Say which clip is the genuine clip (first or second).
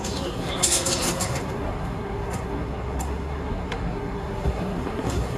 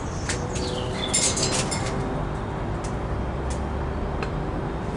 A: second